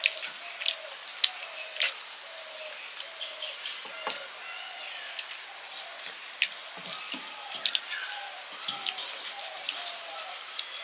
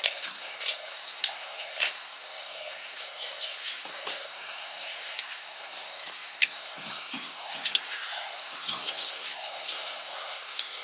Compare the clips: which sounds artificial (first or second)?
second